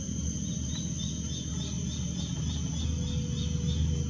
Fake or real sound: real